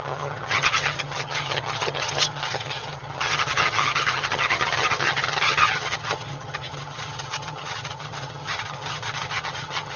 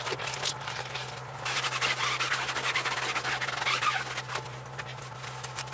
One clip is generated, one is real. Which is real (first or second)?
second